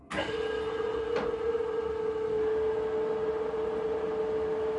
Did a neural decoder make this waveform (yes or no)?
no